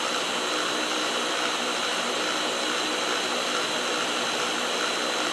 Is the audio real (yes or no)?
yes